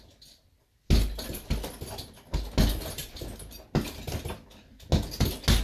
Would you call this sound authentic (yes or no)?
yes